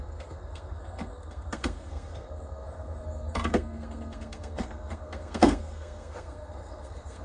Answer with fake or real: fake